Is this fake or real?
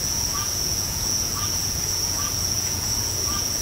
fake